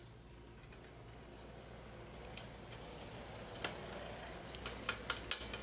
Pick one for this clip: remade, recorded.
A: recorded